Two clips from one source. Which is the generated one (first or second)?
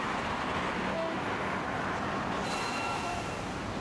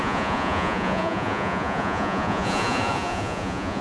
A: second